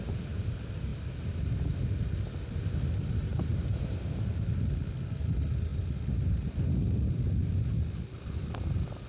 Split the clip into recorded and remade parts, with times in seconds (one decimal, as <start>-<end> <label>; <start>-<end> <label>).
0.0-0.9 recorded; 0.9-1.4 remade; 1.4-3.3 recorded; 3.3-4.3 remade; 4.3-9.1 recorded